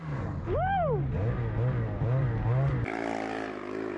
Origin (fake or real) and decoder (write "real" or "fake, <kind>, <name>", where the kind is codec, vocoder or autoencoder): real